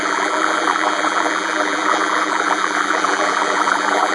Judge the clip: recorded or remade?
remade